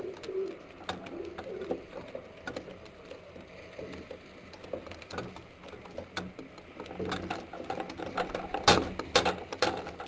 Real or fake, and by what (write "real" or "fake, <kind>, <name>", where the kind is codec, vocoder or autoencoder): real